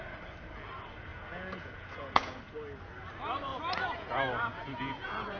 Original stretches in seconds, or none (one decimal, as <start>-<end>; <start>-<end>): 0.0-1.1; 2.4-3.5